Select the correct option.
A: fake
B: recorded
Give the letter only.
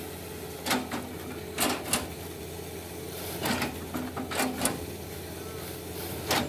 B